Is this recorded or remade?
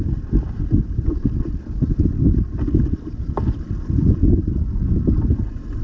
recorded